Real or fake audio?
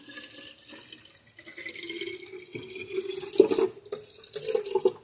real